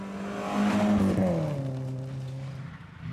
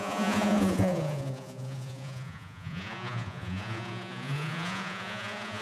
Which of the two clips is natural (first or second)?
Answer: first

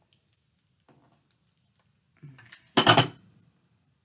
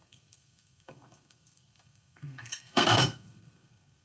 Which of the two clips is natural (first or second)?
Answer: first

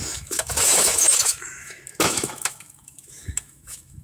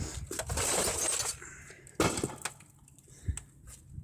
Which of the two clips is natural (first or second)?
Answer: second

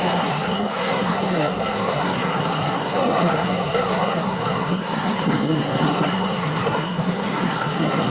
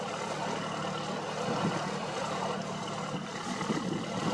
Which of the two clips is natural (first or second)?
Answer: second